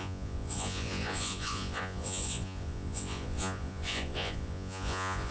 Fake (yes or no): yes